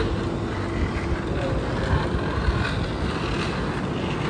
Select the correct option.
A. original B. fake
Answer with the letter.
A